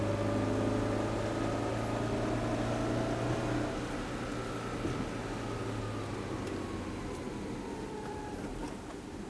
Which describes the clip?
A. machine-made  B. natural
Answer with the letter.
B